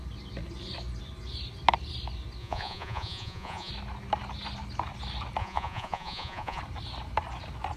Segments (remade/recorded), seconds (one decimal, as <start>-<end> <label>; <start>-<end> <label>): 0.0-2.4 recorded; 2.4-3.7 remade; 3.7-5.4 recorded; 5.4-6.6 remade; 6.6-7.8 recorded